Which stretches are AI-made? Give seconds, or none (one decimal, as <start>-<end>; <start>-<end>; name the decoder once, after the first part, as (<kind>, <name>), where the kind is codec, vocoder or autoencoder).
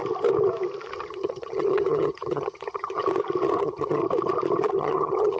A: 1.1-3.0 (vocoder, HiFi-GAN); 3.6-4.0; 4.7-5.4